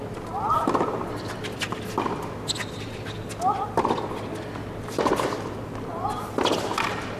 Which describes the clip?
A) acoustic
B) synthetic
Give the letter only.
A